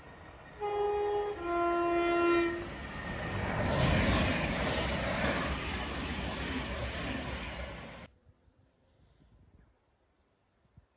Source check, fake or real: real